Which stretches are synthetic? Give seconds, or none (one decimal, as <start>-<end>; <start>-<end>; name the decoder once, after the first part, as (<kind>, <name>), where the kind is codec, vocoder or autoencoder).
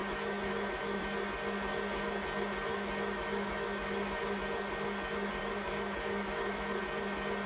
0.0-1.0 (autoencoder, DAC-VAE); 2.7-4.4; 5.4-6.8